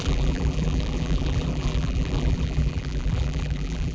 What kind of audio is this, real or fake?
fake